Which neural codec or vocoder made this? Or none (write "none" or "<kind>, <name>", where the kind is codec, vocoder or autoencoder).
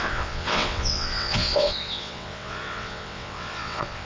vocoder, WaveNeXt